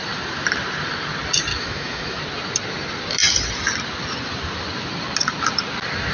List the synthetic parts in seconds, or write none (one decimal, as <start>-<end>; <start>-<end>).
1.5-2.2